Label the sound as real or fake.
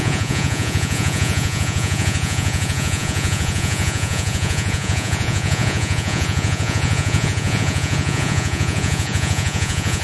fake